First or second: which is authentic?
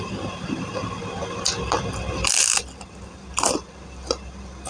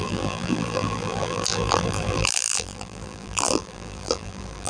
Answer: first